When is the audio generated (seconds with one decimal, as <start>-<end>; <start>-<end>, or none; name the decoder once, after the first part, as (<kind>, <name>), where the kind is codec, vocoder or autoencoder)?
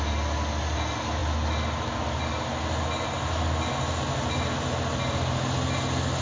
none